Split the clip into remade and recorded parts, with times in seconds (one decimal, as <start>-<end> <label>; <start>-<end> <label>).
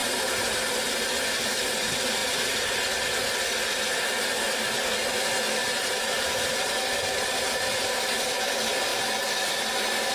0.0-0.6 remade; 0.6-5.6 recorded; 5.6-6.8 remade; 6.8-10.1 recorded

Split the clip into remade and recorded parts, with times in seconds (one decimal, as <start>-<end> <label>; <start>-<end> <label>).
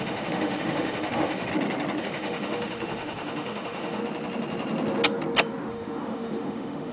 0.0-1.5 remade; 1.5-2.0 recorded; 2.0-4.0 remade; 4.0-5.7 recorded; 5.7-6.9 remade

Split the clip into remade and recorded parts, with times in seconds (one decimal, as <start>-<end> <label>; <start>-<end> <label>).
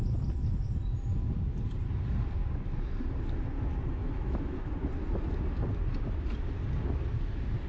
0.0-4.0 recorded; 4.0-4.7 remade; 4.7-7.7 recorded